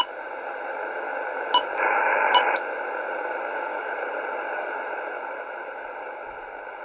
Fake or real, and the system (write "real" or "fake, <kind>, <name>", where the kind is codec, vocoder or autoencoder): real